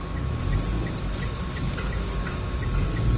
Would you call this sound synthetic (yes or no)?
no